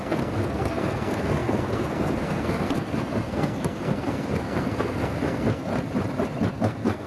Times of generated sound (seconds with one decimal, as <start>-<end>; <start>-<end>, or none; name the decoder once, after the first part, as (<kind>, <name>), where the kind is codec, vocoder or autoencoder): 0.0-5.7 (codec, SNAC); 6.5-7.1